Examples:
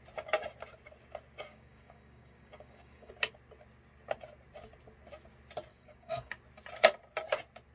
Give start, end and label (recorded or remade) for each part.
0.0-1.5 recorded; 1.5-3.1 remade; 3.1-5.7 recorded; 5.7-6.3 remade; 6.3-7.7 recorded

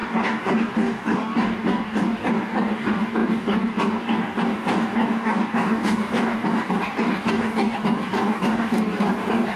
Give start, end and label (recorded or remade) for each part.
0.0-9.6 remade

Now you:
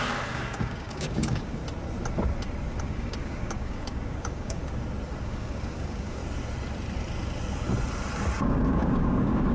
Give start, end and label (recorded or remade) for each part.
0.0-1.6 remade; 1.6-2.8 recorded; 2.8-4.6 remade; 4.6-5.2 recorded; 5.2-6.2 remade; 6.2-8.4 recorded; 8.4-9.5 remade

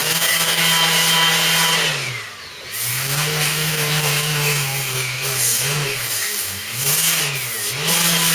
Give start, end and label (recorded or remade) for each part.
0.0-0.6 remade; 0.6-2.9 recorded; 2.9-7.2 remade; 7.2-8.3 recorded

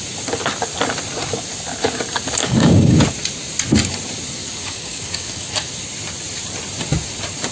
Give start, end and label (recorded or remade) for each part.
0.0-2.4 recorded; 2.4-3.0 remade; 3.0-4.4 recorded; 4.4-5.7 remade; 5.7-7.5 recorded